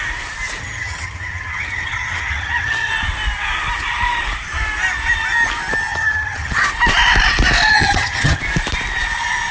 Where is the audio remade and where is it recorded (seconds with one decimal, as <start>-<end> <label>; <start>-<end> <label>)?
0.0-0.6 recorded; 0.6-2.9 remade; 2.9-5.9 recorded; 5.9-6.6 remade; 6.6-7.7 recorded; 7.7-8.4 remade; 8.4-9.5 recorded